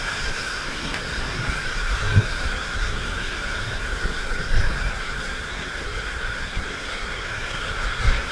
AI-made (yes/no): yes